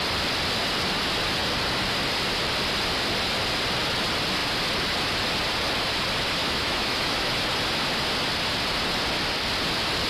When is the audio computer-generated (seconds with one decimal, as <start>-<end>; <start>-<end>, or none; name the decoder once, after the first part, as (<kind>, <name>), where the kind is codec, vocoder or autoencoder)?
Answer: 6.4-7.3 (autoencoder, DAC-VAE)